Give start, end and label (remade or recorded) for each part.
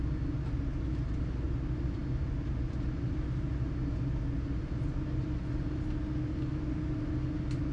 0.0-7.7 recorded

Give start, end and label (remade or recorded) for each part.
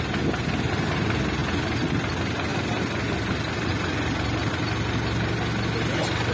0.0-6.3 recorded